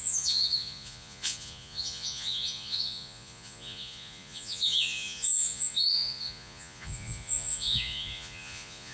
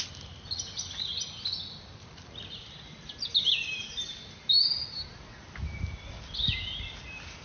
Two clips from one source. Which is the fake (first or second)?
first